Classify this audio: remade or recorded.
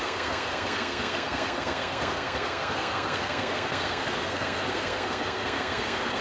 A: remade